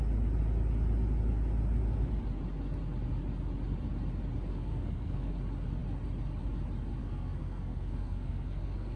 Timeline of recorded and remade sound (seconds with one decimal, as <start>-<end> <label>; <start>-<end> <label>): 0.0-4.5 recorded; 4.5-5.3 remade; 5.3-7.0 recorded; 7.0-9.0 remade